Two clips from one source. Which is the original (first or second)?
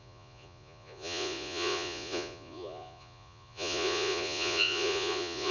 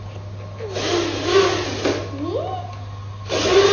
second